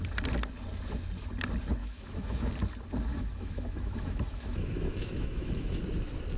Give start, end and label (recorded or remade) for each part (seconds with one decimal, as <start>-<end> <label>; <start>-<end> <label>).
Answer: 0.0-1.8 recorded; 1.8-2.5 remade; 2.5-3.1 recorded; 3.1-5.8 remade; 5.8-6.4 recorded